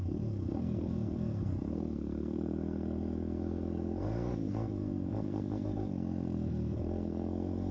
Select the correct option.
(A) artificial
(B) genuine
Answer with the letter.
A